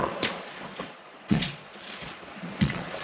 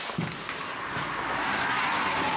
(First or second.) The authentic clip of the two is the second